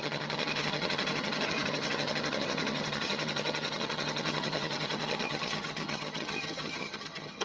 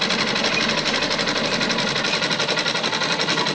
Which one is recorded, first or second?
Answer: second